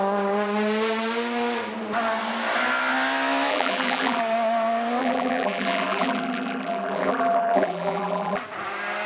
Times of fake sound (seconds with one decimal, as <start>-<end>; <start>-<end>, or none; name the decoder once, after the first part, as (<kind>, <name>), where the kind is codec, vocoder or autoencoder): 3.5-4.2 (vocoder, BigVGAN v2); 5.0-8.4